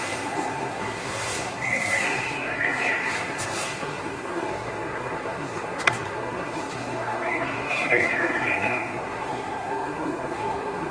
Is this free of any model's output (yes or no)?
no